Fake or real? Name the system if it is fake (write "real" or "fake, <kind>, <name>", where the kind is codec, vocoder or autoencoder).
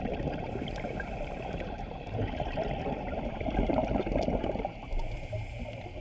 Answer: fake, vocoder, BigVGAN v2